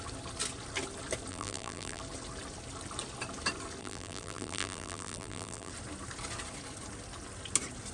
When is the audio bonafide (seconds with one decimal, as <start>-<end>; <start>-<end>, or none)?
0.0-1.3; 2.0-3.8; 5.7-7.9